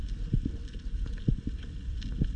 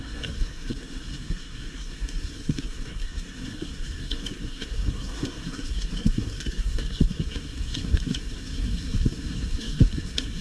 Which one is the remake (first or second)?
second